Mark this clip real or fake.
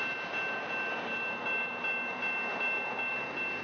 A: real